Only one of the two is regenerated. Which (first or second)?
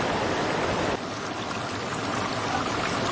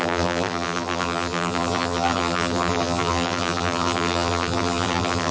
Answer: second